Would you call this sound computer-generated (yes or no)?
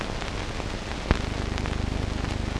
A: no